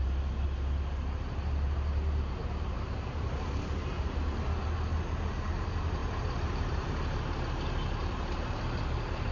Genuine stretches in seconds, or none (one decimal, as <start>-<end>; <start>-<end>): 0.0-2.0; 4.2-6.0; 7.2-8.0; 8.6-9.3